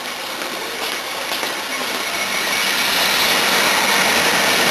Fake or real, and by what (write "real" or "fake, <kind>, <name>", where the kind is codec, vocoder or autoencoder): real